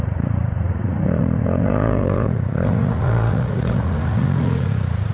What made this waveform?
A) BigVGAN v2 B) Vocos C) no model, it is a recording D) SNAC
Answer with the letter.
B